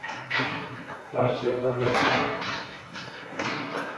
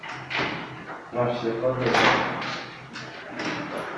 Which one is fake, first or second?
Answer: first